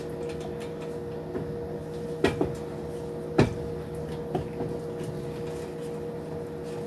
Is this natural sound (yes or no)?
yes